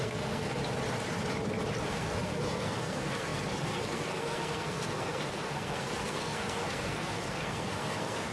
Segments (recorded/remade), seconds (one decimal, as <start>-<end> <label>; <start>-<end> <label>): 0.0-0.6 remade; 0.6-1.9 recorded; 1.9-8.3 remade